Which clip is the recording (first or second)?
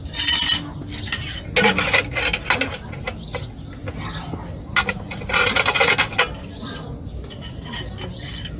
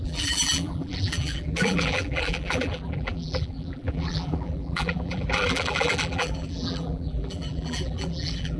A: first